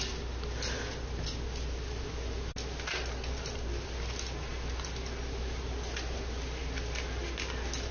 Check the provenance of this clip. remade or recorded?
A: recorded